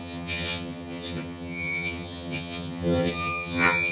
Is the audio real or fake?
fake